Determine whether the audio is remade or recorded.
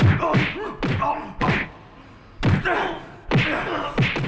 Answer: recorded